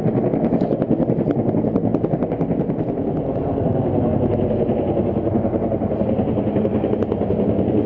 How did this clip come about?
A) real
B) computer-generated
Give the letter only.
A